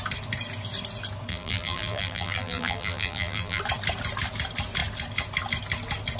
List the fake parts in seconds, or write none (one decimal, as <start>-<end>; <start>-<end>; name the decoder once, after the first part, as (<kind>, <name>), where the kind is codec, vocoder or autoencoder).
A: 1.3-3.6 (vocoder, BigVGAN v2)